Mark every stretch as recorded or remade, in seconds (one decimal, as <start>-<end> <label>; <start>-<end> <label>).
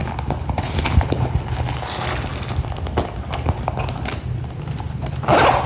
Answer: 0.0-5.7 recorded